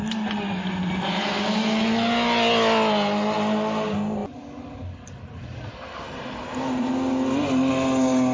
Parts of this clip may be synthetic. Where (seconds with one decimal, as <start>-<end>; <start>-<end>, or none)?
none